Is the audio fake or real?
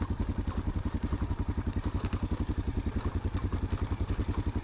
real